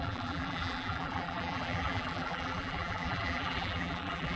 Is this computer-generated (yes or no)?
yes